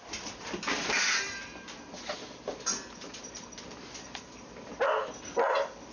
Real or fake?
fake